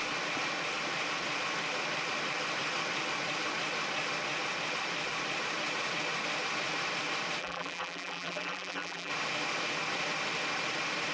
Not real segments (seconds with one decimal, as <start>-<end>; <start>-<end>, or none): 7.4-9.1